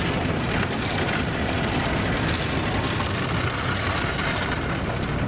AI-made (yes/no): no